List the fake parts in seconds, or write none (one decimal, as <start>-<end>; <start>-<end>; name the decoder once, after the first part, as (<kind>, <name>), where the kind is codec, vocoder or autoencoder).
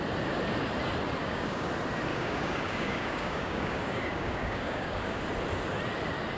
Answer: 1.2-1.7 (codec, DAC); 2.1-5.2